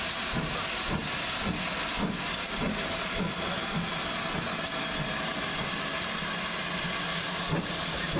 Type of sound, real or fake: real